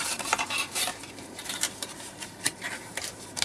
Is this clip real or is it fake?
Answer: fake